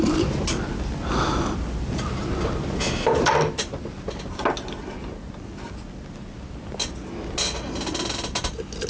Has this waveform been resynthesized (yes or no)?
no